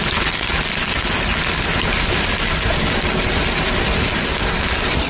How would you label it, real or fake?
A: real